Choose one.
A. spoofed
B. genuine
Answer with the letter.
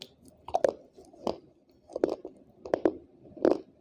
B